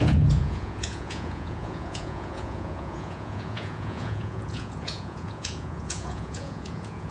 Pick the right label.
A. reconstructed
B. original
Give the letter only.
A